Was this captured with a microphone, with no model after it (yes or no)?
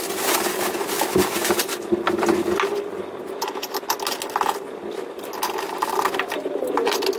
yes